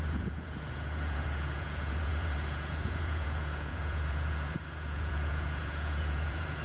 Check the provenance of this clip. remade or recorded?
remade